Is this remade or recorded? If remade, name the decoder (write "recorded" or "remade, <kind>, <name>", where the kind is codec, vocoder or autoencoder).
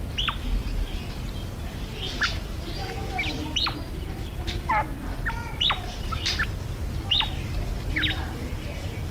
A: recorded